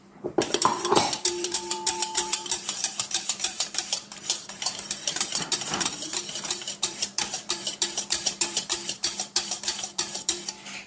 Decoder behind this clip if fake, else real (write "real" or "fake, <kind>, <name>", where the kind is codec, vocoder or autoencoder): fake, vocoder, BigVGAN v2